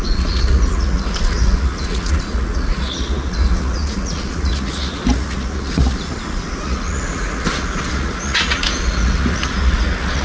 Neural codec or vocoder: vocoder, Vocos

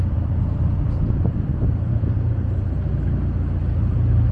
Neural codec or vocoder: vocoder, BigVGAN v2